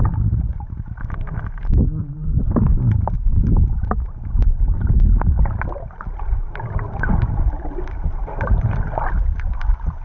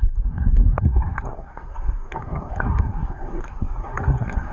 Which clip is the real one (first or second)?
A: first